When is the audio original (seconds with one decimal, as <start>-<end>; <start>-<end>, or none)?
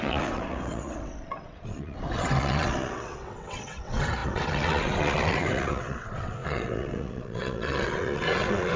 none